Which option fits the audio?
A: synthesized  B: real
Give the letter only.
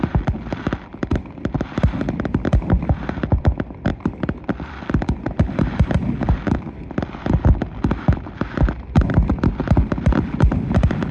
A